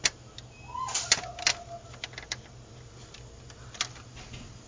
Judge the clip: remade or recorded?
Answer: recorded